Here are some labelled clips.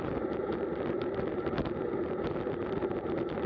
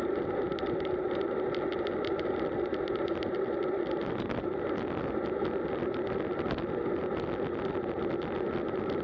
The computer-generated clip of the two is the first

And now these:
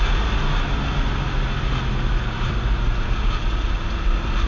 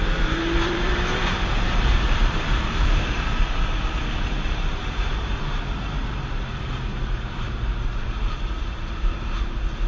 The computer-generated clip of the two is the second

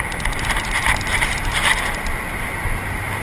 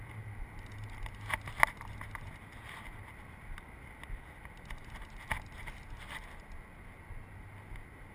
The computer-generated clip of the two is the first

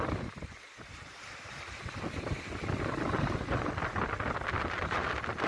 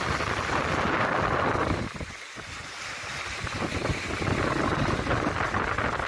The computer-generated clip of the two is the first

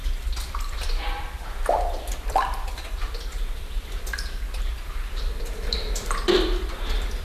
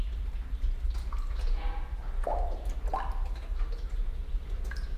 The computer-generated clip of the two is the first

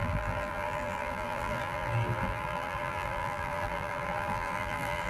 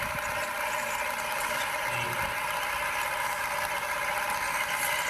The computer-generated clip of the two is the first